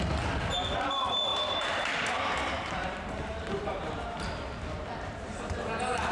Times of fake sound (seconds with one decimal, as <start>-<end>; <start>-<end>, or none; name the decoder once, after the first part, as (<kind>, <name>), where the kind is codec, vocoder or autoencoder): 2.8-4.3 (vocoder, BigVGAN v2)